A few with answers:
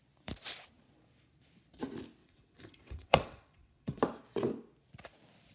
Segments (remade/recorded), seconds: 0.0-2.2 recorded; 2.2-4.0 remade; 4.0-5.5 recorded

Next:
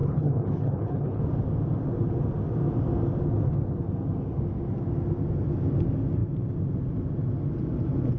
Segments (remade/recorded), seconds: 0.0-1.2 remade; 1.2-8.2 recorded

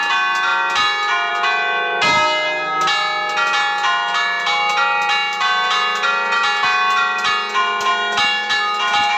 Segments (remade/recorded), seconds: 0.0-9.2 recorded